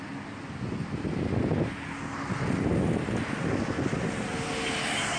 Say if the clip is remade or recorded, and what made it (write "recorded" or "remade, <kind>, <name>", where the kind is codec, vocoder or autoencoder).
recorded